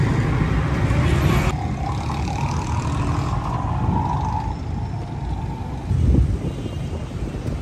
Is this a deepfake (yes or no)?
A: no